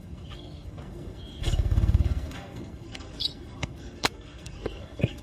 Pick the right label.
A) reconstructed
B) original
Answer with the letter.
A